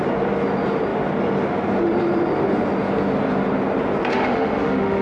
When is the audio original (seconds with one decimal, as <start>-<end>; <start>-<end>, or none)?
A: 0.0-4.1